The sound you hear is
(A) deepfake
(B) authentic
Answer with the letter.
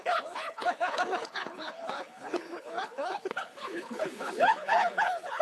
A